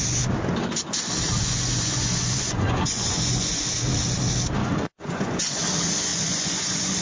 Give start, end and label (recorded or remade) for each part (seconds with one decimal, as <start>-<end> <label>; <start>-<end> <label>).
0.0-1.4 recorded; 1.4-3.6 remade; 3.6-4.6 recorded; 4.6-5.6 remade; 5.6-6.1 recorded; 6.1-7.0 remade